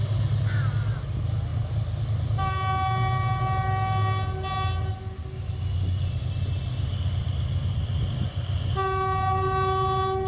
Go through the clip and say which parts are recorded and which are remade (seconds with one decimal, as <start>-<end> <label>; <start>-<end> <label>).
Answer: 0.0-10.3 recorded